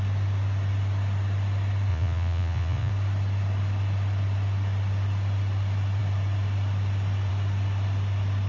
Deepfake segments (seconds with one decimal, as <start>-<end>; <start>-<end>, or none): 1.9-2.9